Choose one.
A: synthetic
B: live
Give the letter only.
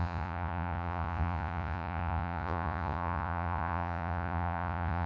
A